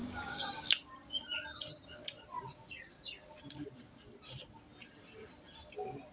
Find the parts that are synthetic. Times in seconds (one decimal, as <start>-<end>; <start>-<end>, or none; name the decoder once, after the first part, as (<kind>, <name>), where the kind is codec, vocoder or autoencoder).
0.0-0.7 (codec, DAC)

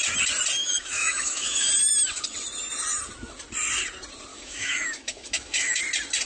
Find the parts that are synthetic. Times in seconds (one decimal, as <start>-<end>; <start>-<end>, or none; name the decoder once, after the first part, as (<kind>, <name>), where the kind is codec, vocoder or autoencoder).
0.6-1.7 (autoencoder, DAC-VAE); 4.3-5.8